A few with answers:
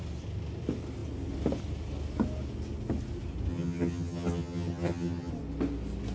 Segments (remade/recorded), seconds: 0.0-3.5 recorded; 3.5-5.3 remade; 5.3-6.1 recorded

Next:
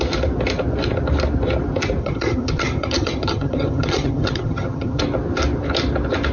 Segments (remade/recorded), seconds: 0.0-2.0 recorded; 2.0-5.0 remade; 5.0-6.3 recorded

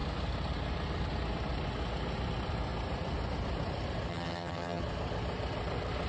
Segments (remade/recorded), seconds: 0.0-4.1 recorded; 4.1-4.8 remade; 4.8-6.1 recorded

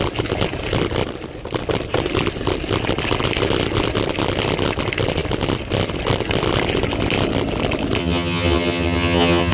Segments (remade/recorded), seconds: 0.0-8.0 recorded; 8.0-9.5 remade

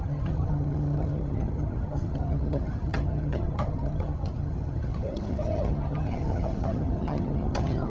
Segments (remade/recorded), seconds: 0.0-7.9 remade